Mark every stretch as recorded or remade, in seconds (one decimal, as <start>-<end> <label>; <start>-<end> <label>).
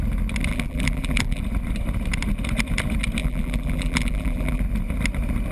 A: 0.0-0.5 recorded; 0.5-1.4 remade; 1.4-3.2 recorded; 3.2-4.6 remade; 4.6-5.5 recorded